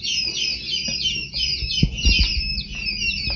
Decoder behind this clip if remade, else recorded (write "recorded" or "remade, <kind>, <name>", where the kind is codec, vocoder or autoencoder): recorded